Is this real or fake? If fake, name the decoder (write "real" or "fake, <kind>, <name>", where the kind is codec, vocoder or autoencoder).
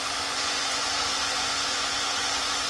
fake, vocoder, Vocos